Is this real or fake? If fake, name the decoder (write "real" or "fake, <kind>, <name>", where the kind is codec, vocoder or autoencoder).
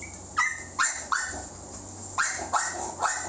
real